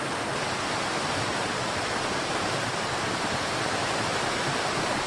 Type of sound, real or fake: fake